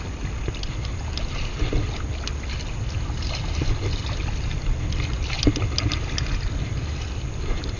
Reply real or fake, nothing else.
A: real